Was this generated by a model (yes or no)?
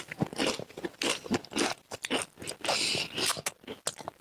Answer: no